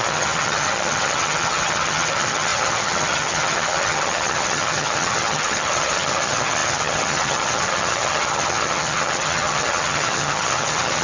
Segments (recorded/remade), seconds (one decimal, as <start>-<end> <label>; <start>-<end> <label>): 0.0-11.0 remade